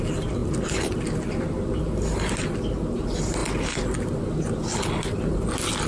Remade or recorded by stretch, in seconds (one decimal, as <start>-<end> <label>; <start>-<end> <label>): 0.0-5.9 recorded